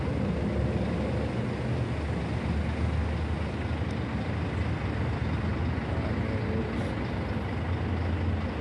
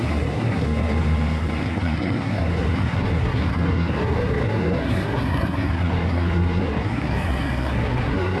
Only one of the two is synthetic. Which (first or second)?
second